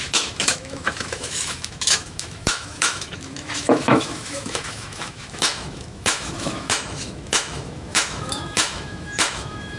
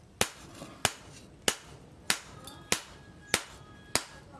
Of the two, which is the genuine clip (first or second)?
second